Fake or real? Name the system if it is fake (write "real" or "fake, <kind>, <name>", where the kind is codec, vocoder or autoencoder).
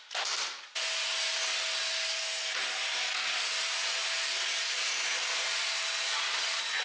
real